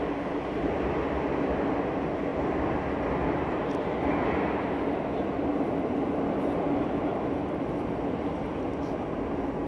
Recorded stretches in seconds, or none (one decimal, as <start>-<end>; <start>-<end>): 0.0-9.7